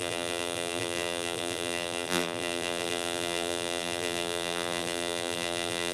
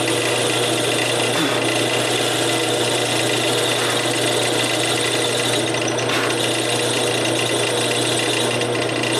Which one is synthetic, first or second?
first